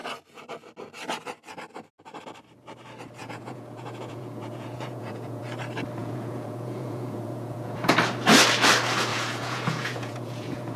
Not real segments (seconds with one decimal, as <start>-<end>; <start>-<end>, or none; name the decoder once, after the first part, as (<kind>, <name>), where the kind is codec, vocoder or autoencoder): 3.2-5.4 (vocoder, Vocos); 6.0-7.9; 9.1-10.8

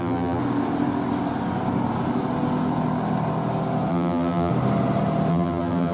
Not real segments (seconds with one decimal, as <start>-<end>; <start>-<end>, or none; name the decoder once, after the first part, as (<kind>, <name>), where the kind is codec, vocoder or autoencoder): 0.0-0.4 (vocoder, BigVGAN v2); 3.9-4.5; 5.3-5.9